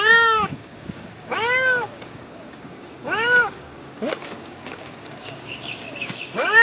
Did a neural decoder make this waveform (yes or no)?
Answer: yes